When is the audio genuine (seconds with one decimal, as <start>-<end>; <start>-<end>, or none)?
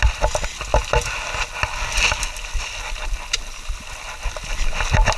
0.0-5.2